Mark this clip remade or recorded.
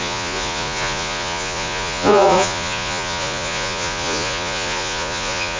remade